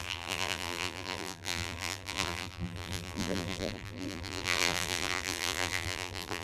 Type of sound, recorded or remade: remade